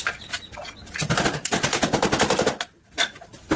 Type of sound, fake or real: real